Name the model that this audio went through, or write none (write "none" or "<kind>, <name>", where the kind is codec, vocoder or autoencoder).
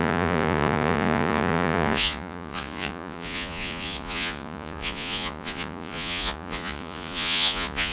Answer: vocoder, Vocos